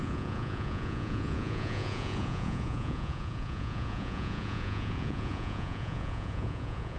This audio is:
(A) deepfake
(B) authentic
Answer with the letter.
A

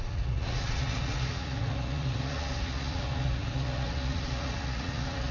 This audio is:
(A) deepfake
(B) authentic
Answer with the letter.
A